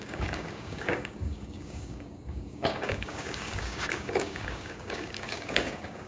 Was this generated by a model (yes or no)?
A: yes